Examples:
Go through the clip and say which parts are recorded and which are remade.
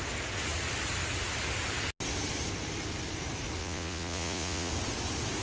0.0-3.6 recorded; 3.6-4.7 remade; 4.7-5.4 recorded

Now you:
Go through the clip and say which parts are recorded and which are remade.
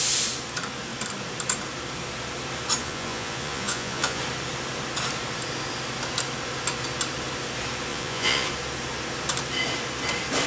0.0-2.8 recorded; 2.8-4.2 remade; 4.2-7.9 recorded; 7.9-8.5 remade; 8.5-10.5 recorded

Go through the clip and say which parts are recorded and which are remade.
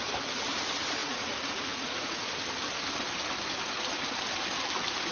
0.0-1.0 recorded; 1.0-2.3 remade; 2.3-5.1 recorded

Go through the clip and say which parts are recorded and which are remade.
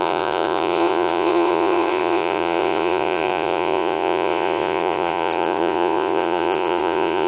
0.0-7.3 remade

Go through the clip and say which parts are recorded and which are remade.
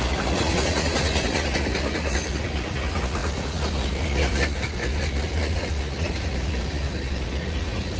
0.0-8.0 remade